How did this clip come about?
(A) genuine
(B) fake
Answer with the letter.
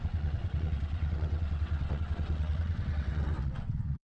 B